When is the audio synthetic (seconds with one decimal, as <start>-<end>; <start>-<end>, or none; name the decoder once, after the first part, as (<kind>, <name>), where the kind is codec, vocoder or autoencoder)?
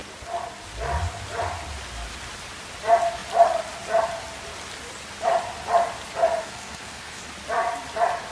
6.4-7.2 (codec, SNAC)